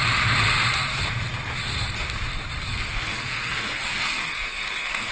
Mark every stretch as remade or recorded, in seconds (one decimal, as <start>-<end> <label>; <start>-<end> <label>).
0.0-2.7 recorded; 2.7-5.1 remade